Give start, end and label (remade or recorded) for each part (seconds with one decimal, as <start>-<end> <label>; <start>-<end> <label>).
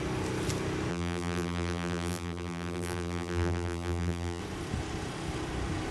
0.0-0.9 recorded; 0.9-4.4 remade; 4.4-5.9 recorded